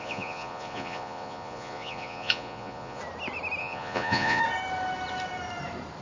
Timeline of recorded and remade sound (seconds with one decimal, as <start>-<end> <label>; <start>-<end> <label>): 0.0-3.0 remade; 3.0-3.6 recorded; 3.6-4.4 remade; 4.4-6.0 recorded